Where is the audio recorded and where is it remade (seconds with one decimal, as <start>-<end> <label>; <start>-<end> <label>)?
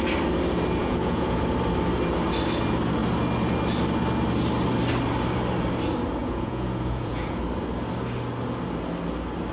0.0-0.8 recorded; 0.8-1.4 remade; 1.4-6.2 recorded; 6.2-7.4 remade; 7.4-9.5 recorded